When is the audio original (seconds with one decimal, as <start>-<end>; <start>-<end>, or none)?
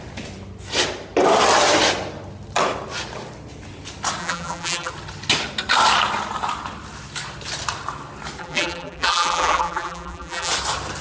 0.0-4.2; 4.9-8.4; 10.5-11.0